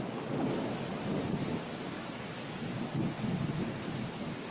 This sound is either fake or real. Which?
real